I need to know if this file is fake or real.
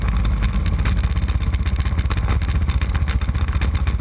real